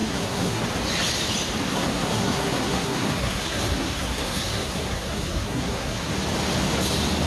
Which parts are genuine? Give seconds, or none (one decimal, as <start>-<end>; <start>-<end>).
0.6-1.7; 6.1-7.3